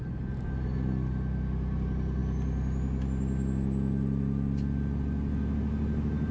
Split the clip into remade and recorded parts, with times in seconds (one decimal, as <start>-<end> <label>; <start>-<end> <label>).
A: 0.0-6.3 recorded